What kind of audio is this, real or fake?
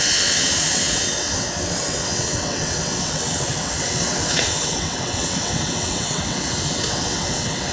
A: fake